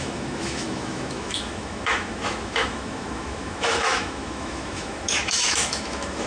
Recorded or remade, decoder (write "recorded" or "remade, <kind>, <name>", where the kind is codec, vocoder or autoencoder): remade, autoencoder, DAC-VAE